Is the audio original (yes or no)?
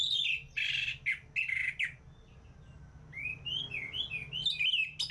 yes